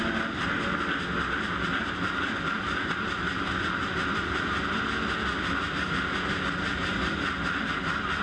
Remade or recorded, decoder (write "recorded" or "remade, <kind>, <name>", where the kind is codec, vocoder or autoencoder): recorded